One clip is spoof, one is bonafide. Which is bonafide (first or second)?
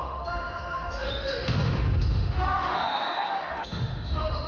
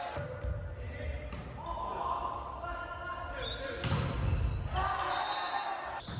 second